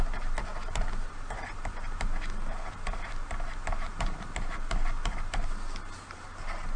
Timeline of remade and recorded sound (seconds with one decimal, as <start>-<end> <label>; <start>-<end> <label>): 0.0-6.8 recorded